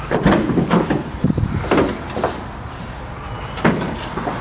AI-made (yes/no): yes